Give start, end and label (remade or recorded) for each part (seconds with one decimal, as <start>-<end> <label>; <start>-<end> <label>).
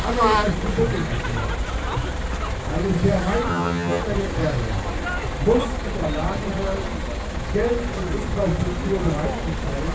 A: 0.0-3.5 recorded; 3.5-4.0 remade; 4.0-9.9 recorded